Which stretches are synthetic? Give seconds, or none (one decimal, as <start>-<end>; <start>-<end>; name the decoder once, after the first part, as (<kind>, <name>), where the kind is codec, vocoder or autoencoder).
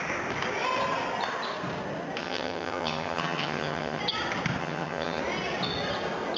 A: 2.2-4.0 (vocoder, HiFi-GAN); 4.6-5.2